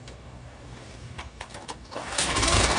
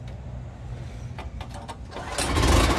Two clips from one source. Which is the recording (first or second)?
second